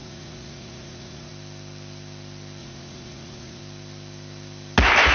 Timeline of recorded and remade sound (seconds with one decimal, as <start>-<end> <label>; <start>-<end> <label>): 0.0-1.3 remade; 1.3-2.6 recorded; 2.6-3.6 remade; 3.6-5.1 recorded

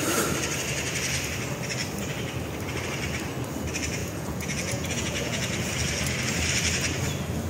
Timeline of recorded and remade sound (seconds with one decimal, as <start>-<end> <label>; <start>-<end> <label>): 0.0-4.0 recorded; 4.0-5.5 remade; 5.5-7.5 recorded

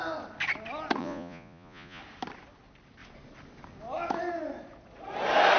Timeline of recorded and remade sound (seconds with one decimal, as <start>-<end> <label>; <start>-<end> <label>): 0.0-1.0 recorded; 1.0-2.0 remade; 2.0-5.6 recorded